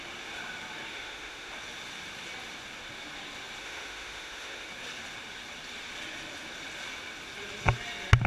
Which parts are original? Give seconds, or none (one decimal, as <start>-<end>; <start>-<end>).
0.0-0.9; 1.5-3.6; 4.7-8.3

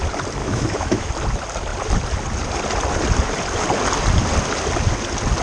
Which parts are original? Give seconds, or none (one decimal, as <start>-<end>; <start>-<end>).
0.0-0.4; 1.1-5.4

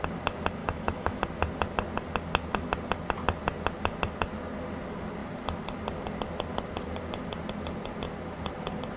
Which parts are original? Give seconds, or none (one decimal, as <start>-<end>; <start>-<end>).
0.0-0.6; 1.2-9.0

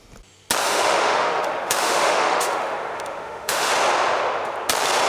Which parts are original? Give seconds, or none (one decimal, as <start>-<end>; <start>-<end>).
0.0-0.6; 3.7-5.1

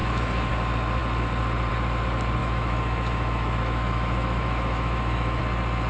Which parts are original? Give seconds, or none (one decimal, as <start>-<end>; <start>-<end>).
0.5-2.4; 5.4-5.9